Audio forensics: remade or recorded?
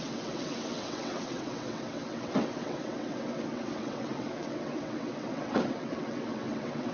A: remade